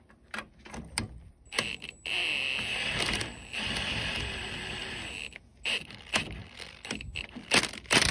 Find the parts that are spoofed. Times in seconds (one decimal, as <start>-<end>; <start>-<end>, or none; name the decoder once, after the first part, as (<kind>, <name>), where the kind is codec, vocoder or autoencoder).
none